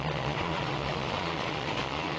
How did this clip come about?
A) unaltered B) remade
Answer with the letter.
B